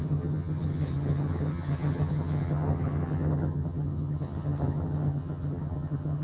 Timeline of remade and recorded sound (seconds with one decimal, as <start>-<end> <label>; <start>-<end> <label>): 0.0-6.2 remade